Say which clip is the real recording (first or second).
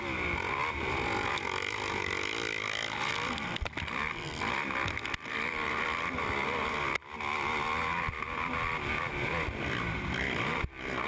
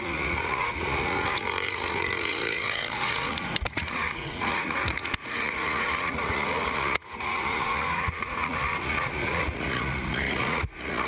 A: first